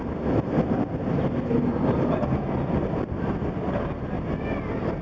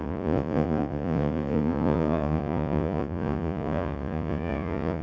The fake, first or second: second